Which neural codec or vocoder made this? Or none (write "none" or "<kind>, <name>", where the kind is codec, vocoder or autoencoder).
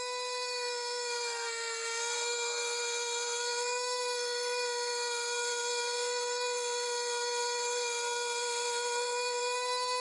codec, SNAC